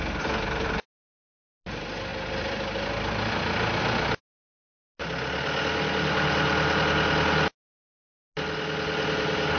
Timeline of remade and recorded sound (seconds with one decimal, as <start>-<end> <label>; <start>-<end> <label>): 0.0-9.6 recorded